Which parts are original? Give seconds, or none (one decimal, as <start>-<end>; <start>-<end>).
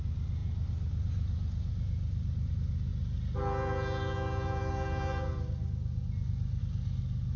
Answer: 0.0-7.4